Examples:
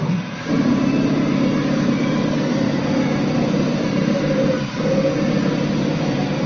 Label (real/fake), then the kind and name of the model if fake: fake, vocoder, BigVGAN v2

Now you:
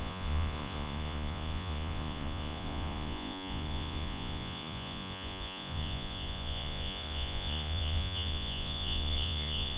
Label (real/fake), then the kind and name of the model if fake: fake, vocoder, Vocos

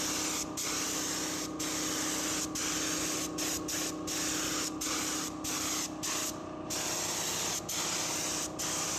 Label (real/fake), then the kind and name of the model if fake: real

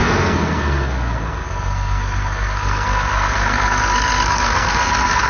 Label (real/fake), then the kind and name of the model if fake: fake, codec, SNAC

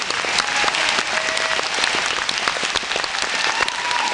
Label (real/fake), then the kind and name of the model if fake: real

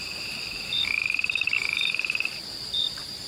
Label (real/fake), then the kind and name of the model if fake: fake, vocoder, BigVGAN v2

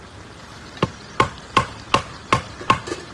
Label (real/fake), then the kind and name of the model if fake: real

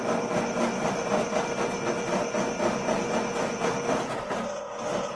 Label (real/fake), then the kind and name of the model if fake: real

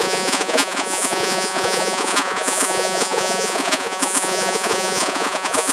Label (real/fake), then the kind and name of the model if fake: fake, vocoder, Vocos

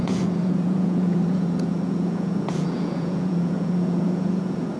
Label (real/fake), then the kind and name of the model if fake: fake, vocoder, Vocos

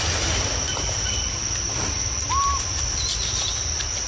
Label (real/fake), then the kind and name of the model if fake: real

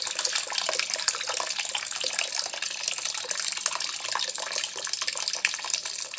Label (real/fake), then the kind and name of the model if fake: real